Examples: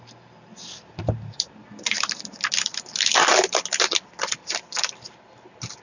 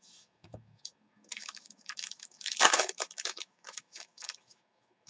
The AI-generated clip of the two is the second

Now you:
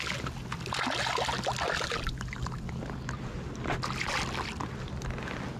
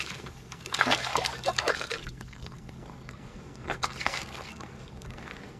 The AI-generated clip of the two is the second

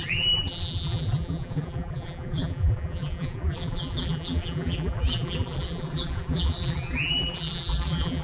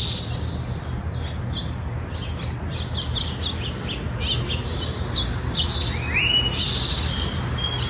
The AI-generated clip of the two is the first